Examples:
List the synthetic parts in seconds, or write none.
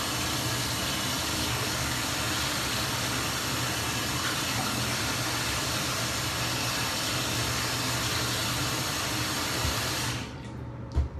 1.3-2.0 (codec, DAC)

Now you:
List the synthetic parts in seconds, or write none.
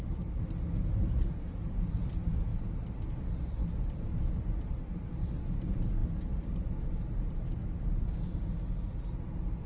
none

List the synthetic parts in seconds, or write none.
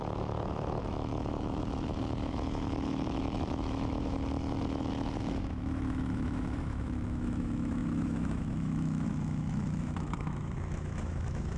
0.0-11.6 (autoencoder, DAC-VAE)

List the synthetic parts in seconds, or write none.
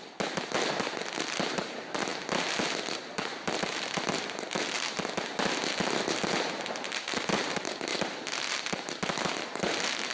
none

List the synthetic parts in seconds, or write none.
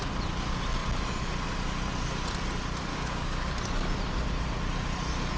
2.9-3.5 (codec, DAC)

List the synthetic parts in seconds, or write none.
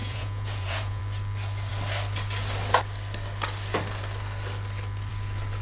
0.0-1.0 (vocoder, Vocos)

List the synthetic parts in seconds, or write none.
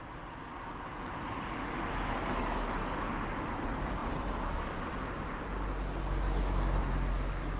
none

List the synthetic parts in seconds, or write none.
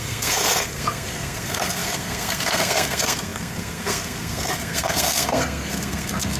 0.0-6.4 (codec, SNAC)